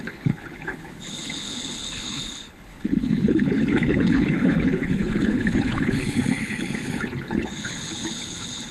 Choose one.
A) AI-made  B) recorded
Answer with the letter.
A